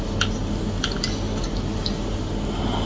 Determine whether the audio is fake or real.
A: real